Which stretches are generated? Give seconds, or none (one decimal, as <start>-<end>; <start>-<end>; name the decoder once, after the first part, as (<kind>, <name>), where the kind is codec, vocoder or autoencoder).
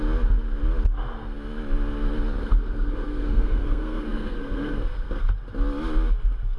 2.4-5.3 (codec, SNAC)